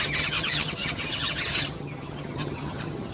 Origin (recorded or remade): remade